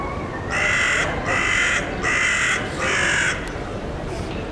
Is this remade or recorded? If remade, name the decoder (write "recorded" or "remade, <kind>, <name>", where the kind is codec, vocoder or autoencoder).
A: recorded